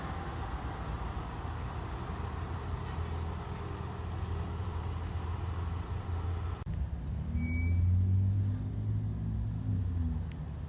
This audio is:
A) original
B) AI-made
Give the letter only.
A